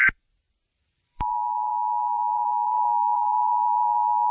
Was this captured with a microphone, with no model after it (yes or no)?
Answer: no